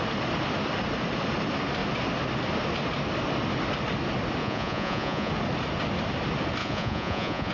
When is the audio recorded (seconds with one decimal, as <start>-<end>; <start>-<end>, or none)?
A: 0.0-4.4; 5.3-6.6